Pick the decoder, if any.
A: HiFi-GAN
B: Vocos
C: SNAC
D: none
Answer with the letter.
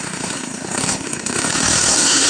C